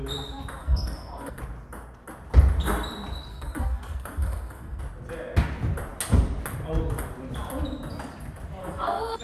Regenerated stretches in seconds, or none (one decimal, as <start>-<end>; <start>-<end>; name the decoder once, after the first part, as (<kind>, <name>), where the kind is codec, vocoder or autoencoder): 0.6-1.4 (codec, SNAC); 3.3-4.8; 8.6-9.2